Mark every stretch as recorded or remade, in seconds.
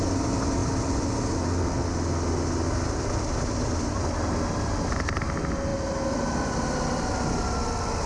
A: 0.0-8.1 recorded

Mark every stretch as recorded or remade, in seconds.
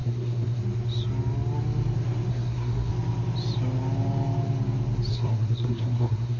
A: 0.0-0.6 remade; 0.6-2.3 recorded; 2.3-2.9 remade; 2.9-5.1 recorded; 5.1-6.4 remade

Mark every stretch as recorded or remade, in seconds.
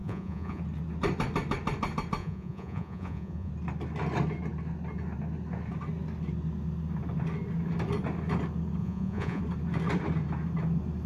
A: 0.0-0.6 remade; 0.6-2.2 recorded; 2.2-3.5 remade; 3.5-8.8 recorded; 8.8-9.4 remade; 9.4-11.1 recorded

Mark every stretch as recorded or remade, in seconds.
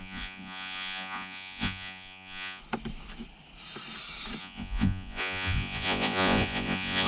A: 0.0-2.6 remade; 2.6-4.4 recorded; 4.4-7.1 remade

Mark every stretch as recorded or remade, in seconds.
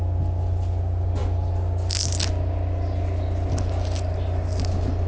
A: 0.0-5.1 recorded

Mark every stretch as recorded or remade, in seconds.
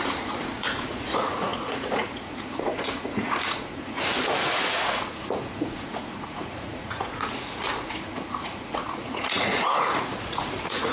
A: 0.0-10.9 remade